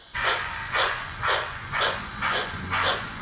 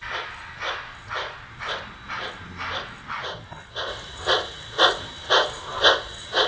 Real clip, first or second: second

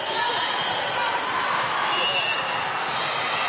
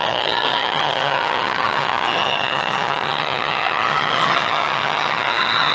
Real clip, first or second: first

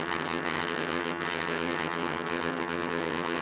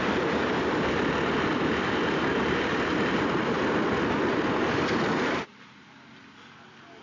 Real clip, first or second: second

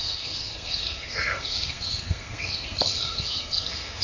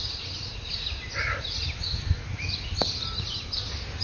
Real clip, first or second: second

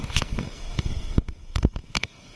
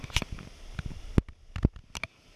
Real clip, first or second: second